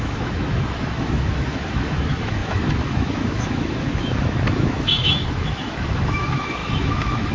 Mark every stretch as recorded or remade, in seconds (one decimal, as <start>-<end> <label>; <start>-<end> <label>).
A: 0.0-7.3 remade